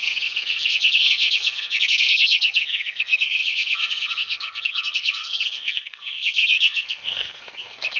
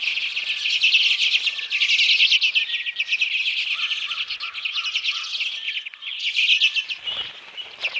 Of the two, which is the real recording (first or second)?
second